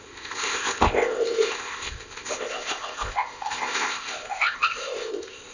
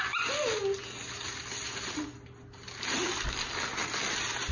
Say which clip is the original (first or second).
second